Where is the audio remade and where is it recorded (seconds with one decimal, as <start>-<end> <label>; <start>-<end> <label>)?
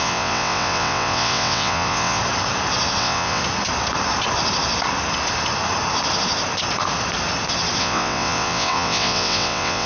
0.0-2.2 remade; 2.2-3.0 recorded; 3.0-3.4 remade; 3.4-7.8 recorded; 7.8-9.9 remade